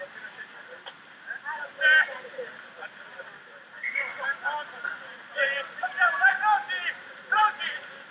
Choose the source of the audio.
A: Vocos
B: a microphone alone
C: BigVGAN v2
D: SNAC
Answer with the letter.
B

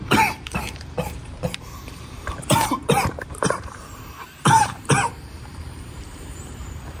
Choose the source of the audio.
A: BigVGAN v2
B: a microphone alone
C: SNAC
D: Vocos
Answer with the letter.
A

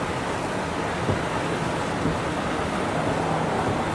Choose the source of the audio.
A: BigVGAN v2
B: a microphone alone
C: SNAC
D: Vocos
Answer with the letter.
B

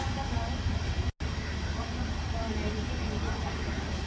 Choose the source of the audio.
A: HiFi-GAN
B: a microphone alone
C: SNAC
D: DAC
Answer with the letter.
B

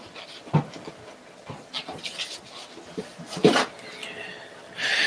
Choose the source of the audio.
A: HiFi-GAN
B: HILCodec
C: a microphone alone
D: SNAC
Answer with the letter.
C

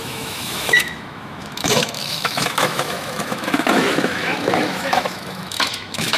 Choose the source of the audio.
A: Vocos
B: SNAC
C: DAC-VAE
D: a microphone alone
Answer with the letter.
C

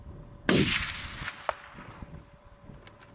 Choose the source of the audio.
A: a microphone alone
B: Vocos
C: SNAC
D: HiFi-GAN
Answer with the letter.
A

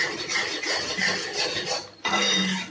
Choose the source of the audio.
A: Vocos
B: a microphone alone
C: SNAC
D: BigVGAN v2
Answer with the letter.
B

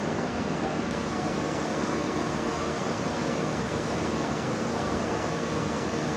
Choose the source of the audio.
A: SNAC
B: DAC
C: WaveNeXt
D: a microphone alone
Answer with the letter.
A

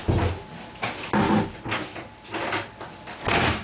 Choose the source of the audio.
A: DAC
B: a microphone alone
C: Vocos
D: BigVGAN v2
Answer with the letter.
B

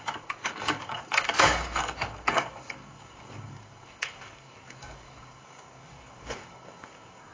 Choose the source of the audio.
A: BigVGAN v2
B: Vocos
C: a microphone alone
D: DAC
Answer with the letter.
D